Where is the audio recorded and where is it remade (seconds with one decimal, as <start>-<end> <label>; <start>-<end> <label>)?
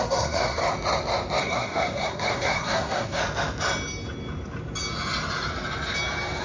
0.0-0.6 remade; 0.6-1.4 recorded; 1.4-3.2 remade; 3.2-6.4 recorded